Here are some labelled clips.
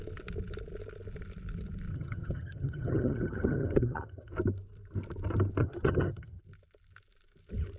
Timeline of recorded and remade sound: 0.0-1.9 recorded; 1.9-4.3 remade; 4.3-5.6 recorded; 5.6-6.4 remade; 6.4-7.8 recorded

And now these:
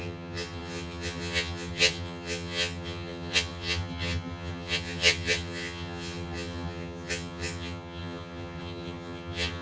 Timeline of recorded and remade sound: 0.0-9.6 remade

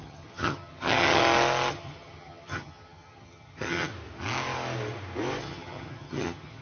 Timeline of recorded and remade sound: 0.0-1.2 remade; 1.2-1.7 recorded; 1.7-3.9 remade; 3.9-5.4 recorded; 5.4-6.6 remade

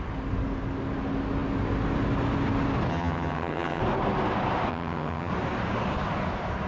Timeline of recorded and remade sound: 0.0-2.9 recorded; 2.9-3.8 remade; 3.8-4.7 recorded; 4.7-5.3 remade; 5.3-6.7 recorded

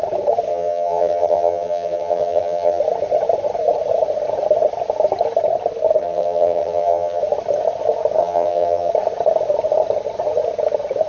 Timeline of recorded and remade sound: 0.0-0.5 recorded; 0.5-2.8 remade; 2.8-6.0 recorded; 6.0-7.2 remade; 7.2-8.2 recorded; 8.2-8.9 remade; 8.9-11.1 recorded

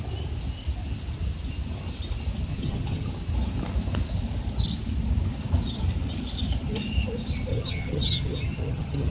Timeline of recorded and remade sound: 0.0-2.5 recorded; 2.5-3.1 remade; 3.1-7.5 recorded; 7.5-9.1 remade